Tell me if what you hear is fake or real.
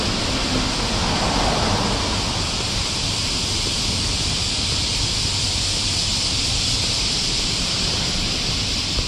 fake